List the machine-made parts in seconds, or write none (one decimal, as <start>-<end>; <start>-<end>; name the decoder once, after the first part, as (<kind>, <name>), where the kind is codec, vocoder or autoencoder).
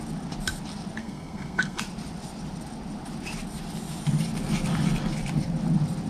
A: 1.0-1.8 (codec, SNAC)